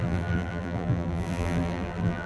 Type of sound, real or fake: fake